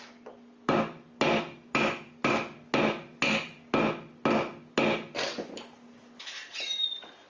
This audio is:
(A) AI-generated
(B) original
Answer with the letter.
B